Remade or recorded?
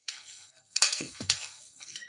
remade